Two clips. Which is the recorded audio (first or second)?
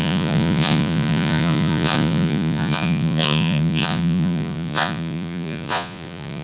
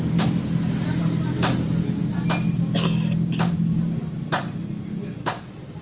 second